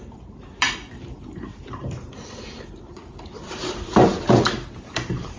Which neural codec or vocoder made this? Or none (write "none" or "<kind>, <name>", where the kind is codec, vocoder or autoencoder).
vocoder, BigVGAN v2